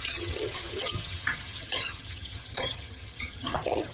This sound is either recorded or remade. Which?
remade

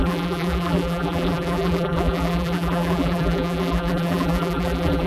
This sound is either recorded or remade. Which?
remade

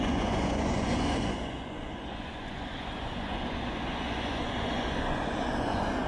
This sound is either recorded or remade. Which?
remade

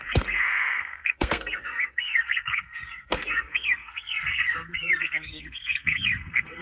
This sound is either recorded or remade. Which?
remade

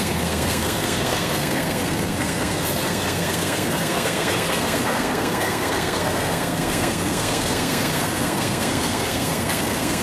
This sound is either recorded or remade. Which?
remade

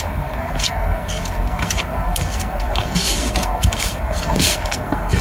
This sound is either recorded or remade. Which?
remade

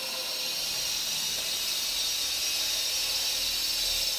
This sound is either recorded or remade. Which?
recorded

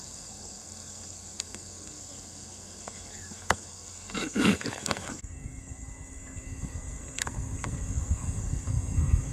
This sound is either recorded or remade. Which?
remade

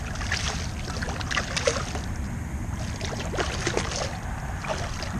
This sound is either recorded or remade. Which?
recorded